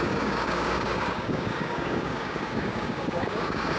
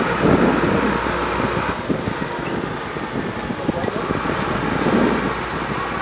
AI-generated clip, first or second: first